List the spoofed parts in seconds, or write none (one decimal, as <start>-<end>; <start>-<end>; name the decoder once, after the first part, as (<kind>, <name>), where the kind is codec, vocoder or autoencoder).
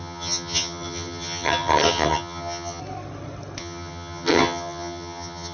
0.0-2.8 (vocoder, HiFi-GAN); 3.6-5.5